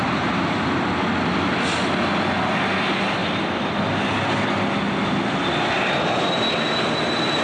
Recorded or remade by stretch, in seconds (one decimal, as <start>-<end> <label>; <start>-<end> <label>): 0.0-7.4 recorded